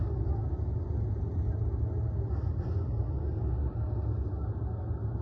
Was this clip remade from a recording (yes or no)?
no